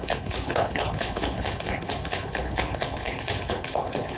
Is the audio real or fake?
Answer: fake